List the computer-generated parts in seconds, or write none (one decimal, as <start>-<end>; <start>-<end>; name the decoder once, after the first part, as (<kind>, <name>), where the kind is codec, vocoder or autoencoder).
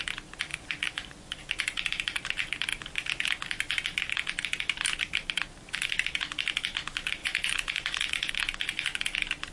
0.5-1.4 (vocoder, Vocos); 7.2-8.3